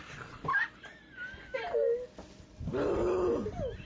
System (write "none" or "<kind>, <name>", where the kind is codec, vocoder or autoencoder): none